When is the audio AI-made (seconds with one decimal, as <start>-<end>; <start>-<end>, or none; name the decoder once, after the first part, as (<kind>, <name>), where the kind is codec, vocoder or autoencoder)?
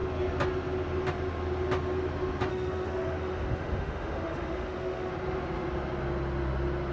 2.5-5.1 (autoencoder, DAC-VAE)